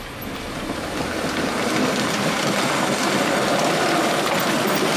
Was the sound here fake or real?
real